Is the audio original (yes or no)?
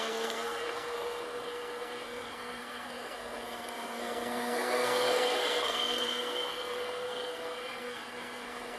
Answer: no